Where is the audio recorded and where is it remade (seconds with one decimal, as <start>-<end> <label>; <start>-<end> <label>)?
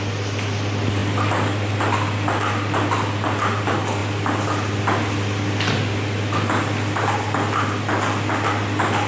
0.0-9.1 recorded